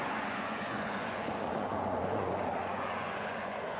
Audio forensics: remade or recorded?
remade